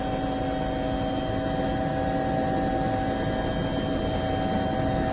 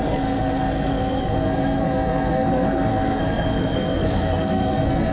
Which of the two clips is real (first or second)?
first